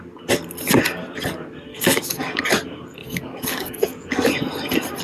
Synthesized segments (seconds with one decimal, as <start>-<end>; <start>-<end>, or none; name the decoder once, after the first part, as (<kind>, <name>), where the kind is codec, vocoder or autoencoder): 1.7-2.4 (codec, DAC); 3.0-4.3